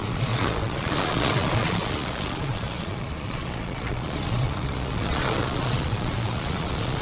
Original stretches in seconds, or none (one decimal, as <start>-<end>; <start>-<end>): none